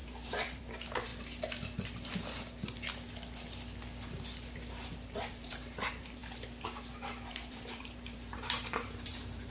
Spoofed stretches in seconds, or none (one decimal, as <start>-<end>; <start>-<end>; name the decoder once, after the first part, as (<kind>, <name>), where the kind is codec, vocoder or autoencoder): 0.0-1.1 (vocoder, BigVGAN v2); 4.7-6.2; 7.3-9.5